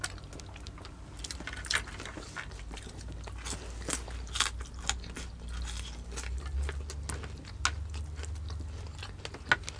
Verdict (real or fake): real